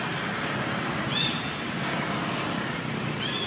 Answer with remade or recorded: recorded